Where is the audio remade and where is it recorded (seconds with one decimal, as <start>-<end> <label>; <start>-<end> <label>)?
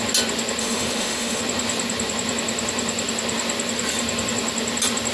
0.0-0.6 recorded; 0.6-1.4 remade; 1.4-5.1 recorded